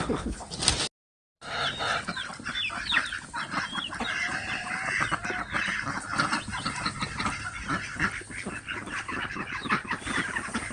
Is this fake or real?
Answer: real